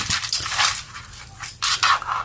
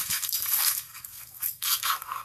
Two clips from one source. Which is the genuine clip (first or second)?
first